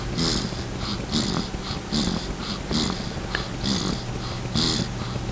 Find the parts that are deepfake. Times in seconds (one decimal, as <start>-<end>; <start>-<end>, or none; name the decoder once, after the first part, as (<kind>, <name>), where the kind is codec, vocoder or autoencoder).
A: none